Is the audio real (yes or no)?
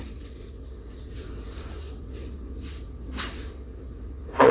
no